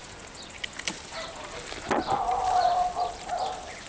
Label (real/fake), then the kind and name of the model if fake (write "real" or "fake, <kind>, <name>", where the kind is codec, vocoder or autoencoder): real